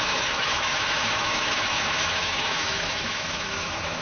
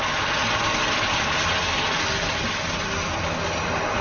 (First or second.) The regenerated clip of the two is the first